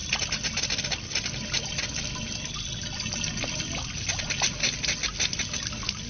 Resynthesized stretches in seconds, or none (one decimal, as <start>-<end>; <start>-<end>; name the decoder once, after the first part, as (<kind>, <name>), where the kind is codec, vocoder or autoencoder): none

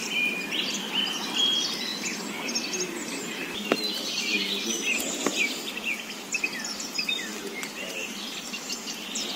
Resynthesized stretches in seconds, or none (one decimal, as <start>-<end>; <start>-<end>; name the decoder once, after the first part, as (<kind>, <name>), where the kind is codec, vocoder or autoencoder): 0.0-1.9 (vocoder, BigVGAN v2); 5.0-9.4

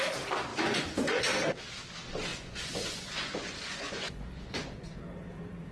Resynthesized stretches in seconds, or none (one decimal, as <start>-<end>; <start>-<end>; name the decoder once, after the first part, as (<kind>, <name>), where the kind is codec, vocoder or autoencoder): 0.5-1.2 (vocoder, Vocos); 2.3-4.9

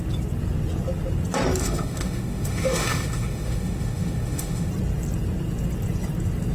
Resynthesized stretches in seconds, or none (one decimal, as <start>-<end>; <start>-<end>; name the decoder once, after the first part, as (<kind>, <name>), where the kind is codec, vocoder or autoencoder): 1.6-4.7 (autoencoder, DAC-VAE)